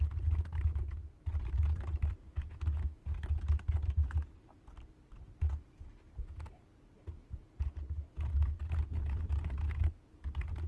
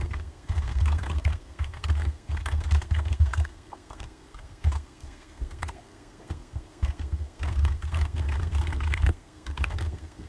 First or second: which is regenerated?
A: second